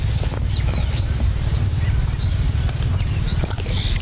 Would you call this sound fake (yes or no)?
yes